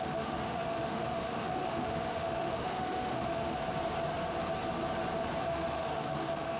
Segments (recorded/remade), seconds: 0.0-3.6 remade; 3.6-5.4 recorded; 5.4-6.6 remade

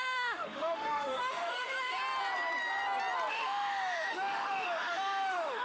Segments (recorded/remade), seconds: 0.0-2.0 remade; 2.0-3.3 recorded; 3.3-5.6 remade

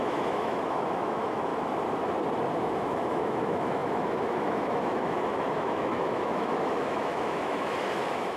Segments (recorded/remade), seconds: 0.0-1.5 remade; 1.5-2.6 recorded; 2.6-8.4 remade